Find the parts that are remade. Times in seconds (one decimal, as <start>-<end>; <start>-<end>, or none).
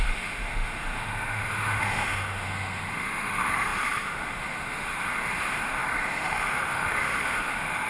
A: 0.0-7.9